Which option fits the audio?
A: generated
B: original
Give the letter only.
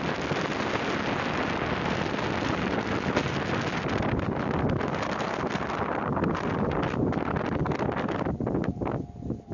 B